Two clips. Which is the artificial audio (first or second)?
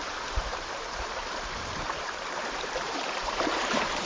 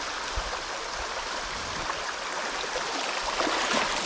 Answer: first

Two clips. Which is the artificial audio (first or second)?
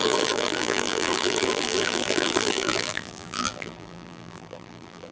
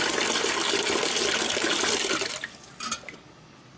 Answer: first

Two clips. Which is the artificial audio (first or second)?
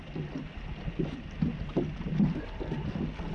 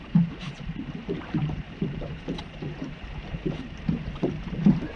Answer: second